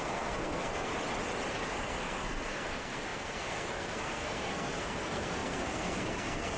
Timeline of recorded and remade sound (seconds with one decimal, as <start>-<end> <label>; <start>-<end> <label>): 0.0-0.9 remade; 0.9-1.5 recorded; 1.5-6.6 remade